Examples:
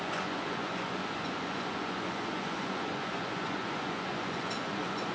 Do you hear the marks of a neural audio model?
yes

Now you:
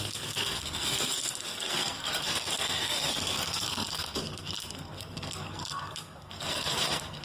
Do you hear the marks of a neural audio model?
yes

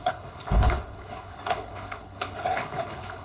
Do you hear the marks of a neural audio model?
yes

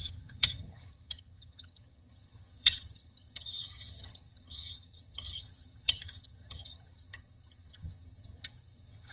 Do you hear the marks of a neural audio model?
yes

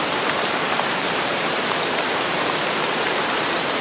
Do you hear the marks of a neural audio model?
yes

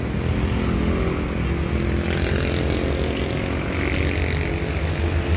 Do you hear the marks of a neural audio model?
no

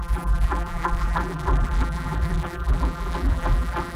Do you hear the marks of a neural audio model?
yes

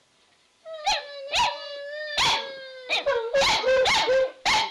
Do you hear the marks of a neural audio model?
no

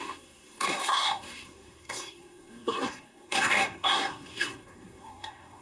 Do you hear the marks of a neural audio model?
yes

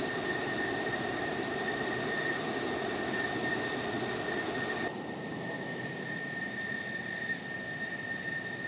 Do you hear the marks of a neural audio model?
yes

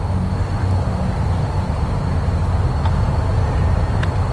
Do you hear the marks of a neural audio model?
no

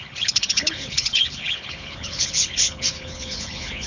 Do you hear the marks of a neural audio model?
yes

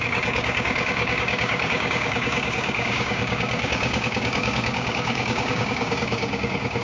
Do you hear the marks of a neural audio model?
yes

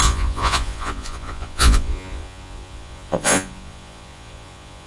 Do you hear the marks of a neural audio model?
yes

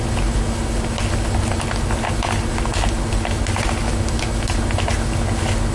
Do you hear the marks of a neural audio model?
no